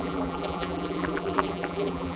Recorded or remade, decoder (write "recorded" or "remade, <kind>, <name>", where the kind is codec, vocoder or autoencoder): remade, vocoder, BigVGAN v2